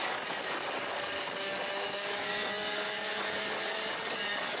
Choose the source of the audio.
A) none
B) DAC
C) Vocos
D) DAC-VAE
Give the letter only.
B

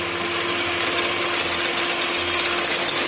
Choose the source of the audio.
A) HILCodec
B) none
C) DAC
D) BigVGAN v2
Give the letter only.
B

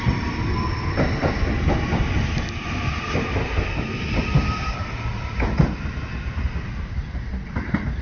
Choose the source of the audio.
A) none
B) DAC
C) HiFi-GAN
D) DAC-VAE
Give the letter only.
A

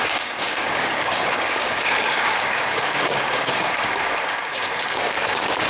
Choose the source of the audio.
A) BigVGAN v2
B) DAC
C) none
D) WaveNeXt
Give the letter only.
B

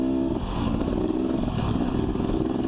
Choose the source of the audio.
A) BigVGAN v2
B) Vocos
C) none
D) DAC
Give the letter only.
D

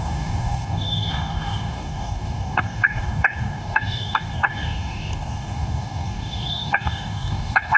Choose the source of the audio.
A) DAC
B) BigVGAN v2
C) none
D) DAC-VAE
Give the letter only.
A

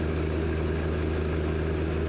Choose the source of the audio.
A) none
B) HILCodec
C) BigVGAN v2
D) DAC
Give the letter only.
A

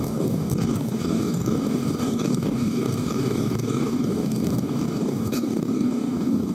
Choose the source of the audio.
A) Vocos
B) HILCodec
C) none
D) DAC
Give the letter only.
D